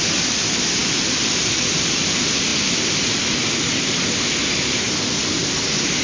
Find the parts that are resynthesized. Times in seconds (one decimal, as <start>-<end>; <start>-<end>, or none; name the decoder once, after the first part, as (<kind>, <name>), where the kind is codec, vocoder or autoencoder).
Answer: none